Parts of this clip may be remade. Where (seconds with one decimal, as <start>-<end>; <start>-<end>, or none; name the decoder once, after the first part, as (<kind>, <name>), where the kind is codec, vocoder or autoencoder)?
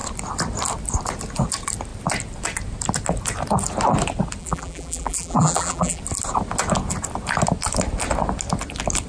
4.4-6.0 (vocoder, BigVGAN v2)